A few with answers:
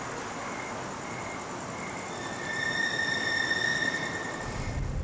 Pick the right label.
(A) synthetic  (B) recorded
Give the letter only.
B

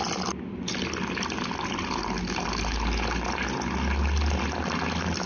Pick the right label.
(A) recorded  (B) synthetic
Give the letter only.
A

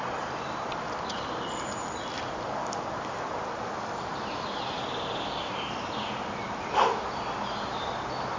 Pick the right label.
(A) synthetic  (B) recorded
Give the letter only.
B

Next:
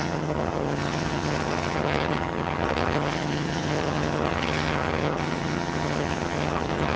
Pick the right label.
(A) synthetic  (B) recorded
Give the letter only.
A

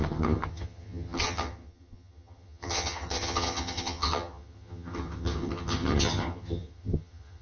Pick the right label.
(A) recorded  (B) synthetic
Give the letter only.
B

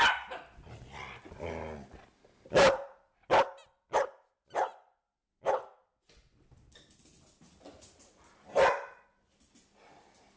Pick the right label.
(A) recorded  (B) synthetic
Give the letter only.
A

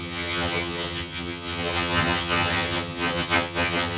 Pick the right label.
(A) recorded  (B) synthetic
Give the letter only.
B